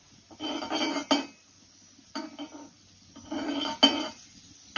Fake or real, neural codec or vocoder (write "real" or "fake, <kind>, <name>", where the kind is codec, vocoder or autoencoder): real